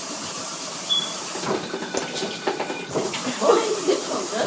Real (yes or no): no